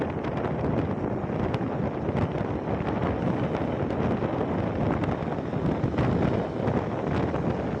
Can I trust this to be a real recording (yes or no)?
yes